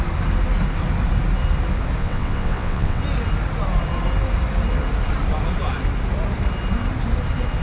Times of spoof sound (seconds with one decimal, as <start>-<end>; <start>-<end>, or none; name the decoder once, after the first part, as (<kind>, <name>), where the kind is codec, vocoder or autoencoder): 2.0-3.0 (vocoder, WaveNeXt)